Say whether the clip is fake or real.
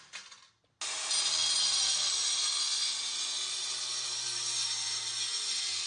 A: real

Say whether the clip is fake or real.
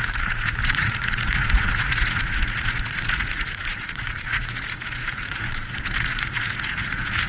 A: fake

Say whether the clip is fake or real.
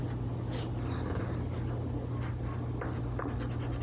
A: real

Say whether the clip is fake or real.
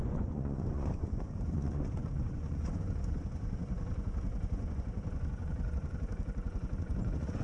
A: fake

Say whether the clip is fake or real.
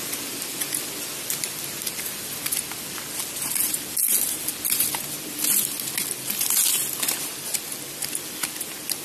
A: real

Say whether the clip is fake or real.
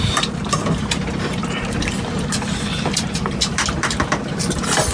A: fake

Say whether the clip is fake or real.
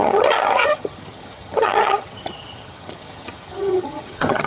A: fake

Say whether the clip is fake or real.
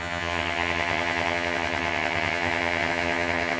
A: fake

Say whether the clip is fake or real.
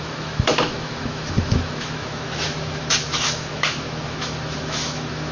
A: fake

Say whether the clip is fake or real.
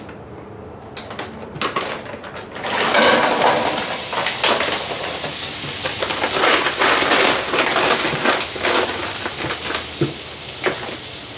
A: real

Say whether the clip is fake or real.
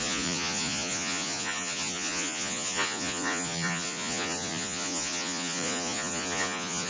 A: fake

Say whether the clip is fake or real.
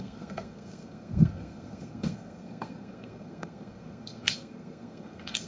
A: fake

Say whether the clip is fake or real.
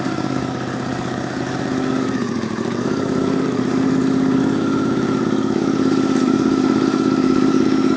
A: fake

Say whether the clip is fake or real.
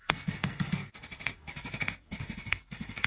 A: fake